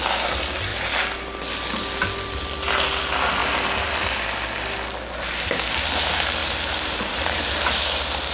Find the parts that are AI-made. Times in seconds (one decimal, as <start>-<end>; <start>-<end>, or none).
none